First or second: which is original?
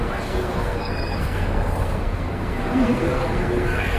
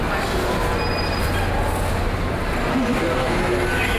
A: second